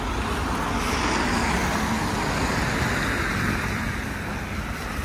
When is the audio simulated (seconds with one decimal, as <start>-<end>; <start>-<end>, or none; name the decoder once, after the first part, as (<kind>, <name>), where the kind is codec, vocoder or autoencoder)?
none